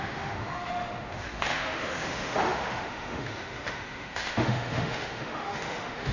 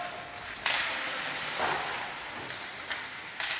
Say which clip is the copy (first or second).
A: first